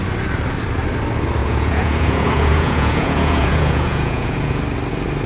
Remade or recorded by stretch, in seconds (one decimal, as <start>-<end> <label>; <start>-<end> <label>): 0.0-1.4 recorded; 1.4-4.6 remade; 4.6-5.3 recorded